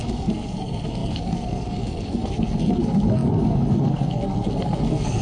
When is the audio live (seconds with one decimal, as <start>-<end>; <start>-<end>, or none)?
none